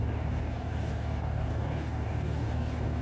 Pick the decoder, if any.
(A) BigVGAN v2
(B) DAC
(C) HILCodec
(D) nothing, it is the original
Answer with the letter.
B